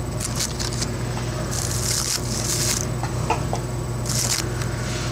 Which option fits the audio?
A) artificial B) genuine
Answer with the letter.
B